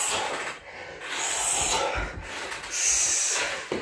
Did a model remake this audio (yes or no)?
no